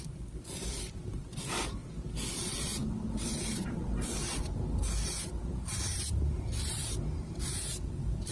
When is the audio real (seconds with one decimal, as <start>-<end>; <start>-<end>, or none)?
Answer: 1.8-2.3; 2.8-5.9; 6.8-7.7